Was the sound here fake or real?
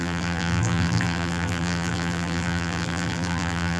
fake